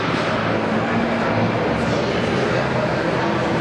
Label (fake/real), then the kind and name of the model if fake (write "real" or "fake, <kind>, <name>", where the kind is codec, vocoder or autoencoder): real